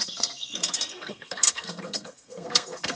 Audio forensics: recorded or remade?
remade